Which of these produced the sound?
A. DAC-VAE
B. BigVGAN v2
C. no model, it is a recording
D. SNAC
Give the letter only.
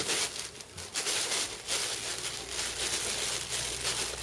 C